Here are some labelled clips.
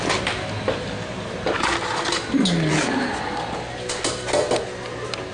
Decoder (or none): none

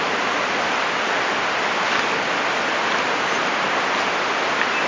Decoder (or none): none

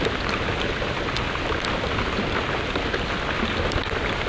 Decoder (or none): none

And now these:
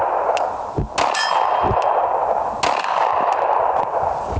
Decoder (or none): none